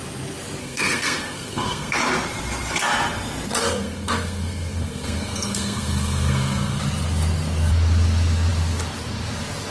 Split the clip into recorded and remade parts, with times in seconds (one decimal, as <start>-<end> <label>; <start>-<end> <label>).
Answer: 0.0-0.6 recorded; 0.6-1.9 remade; 1.9-3.6 recorded; 3.6-6.8 remade; 6.8-9.7 recorded